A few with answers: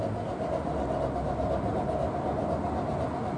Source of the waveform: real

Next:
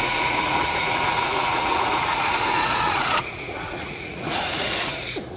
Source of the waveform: fake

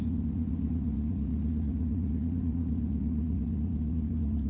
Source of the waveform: fake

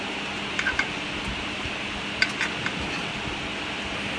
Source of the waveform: real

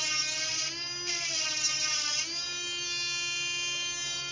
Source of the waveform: real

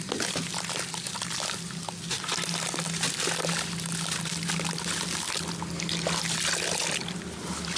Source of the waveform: real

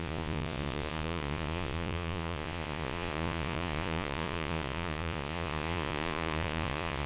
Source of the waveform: fake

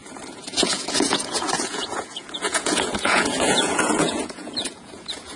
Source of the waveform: fake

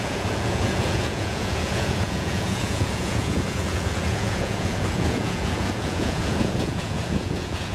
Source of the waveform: fake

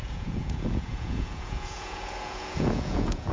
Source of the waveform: fake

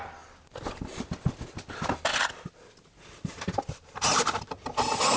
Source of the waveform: real